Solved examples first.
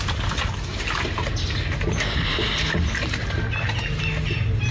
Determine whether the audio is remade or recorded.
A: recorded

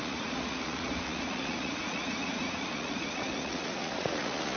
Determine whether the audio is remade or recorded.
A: remade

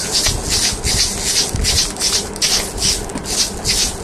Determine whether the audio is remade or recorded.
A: recorded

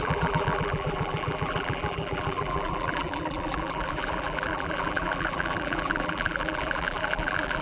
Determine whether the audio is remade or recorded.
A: remade